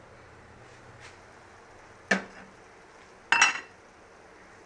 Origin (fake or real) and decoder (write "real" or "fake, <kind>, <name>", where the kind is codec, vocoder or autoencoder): real